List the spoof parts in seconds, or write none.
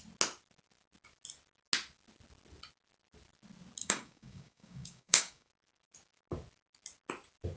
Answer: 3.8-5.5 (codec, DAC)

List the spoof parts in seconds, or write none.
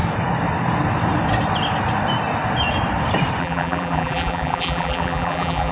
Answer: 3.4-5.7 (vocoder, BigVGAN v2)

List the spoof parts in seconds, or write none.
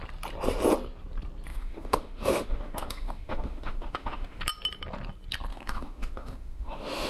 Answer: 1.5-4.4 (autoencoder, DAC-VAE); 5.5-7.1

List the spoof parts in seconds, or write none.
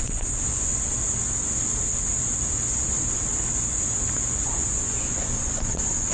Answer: 0.0-0.7 (vocoder, Vocos); 4.4-6.1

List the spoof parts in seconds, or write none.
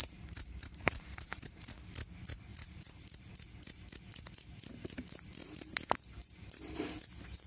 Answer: 0.0-1.7 (vocoder, BigVGAN v2); 2.5-3.2; 5.4-7.0